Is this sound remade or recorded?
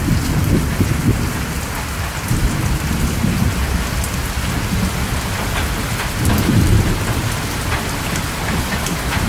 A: recorded